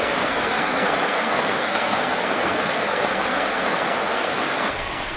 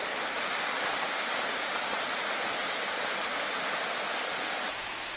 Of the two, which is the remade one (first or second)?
first